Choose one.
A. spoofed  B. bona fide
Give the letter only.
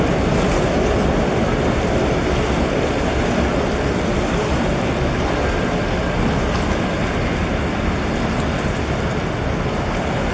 B